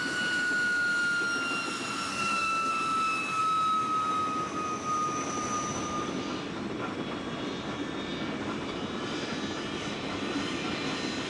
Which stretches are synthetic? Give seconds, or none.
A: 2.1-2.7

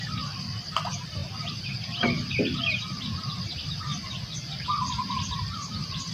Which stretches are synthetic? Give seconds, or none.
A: 1.2-2.3; 3.9-6.1

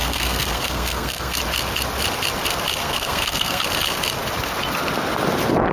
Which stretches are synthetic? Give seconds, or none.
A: 0.0-1.4; 2.8-3.6

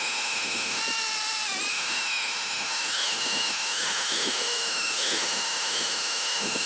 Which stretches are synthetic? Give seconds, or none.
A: 0.0-0.8; 1.7-6.7

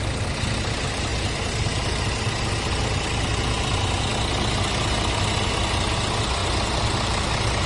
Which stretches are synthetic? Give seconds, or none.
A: none